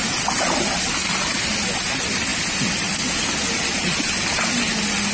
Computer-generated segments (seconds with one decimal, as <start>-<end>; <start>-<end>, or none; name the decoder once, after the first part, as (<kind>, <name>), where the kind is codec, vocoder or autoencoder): none